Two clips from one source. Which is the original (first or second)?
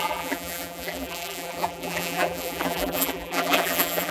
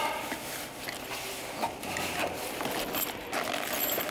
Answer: second